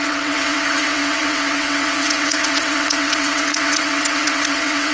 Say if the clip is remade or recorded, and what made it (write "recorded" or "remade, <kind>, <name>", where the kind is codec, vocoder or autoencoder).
remade, vocoder, WaveNeXt